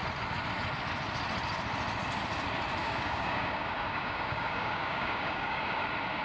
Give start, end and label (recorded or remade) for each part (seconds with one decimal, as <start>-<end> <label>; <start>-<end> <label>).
0.0-2.8 recorded; 2.8-5.6 remade; 5.6-6.2 recorded